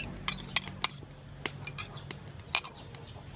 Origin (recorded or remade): recorded